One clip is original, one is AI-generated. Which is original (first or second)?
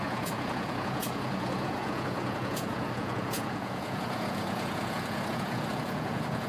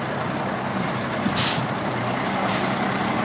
second